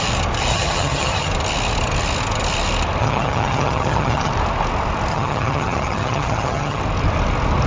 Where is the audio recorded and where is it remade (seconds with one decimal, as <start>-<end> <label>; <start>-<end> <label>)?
0.0-0.5 recorded; 0.5-1.3 remade; 1.3-3.0 recorded; 3.0-4.3 remade; 4.3-5.1 recorded; 5.1-6.8 remade; 6.8-7.7 recorded